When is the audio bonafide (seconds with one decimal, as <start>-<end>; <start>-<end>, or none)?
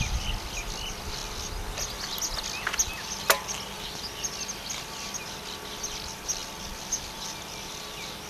0.0-8.3